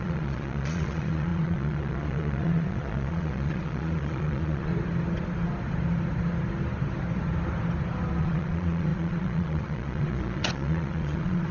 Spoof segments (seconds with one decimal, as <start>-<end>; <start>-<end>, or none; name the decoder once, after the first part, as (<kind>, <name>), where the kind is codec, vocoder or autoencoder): 0.0-4.7 (vocoder, Vocos); 8.2-11.5